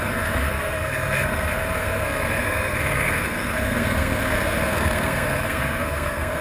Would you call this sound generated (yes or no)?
yes